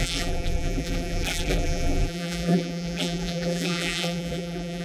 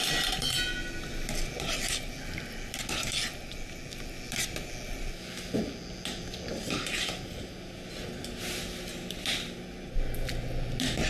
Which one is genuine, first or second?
second